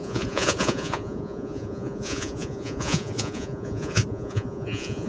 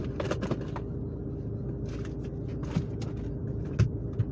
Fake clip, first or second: first